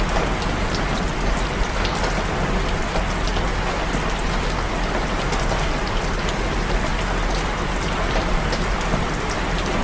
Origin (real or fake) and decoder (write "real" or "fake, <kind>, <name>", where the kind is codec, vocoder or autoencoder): real